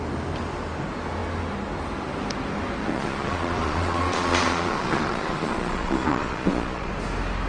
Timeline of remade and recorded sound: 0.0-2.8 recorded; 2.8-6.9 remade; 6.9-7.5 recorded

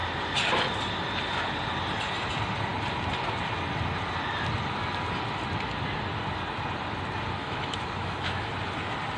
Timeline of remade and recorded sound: 0.0-7.4 recorded; 7.4-8.5 remade; 8.5-9.2 recorded

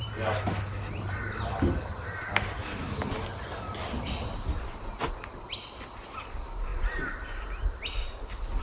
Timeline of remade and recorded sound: 0.0-8.6 recorded

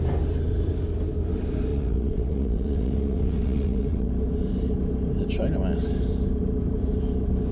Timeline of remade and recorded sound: 0.0-1.7 recorded; 1.7-4.1 remade; 4.1-7.5 recorded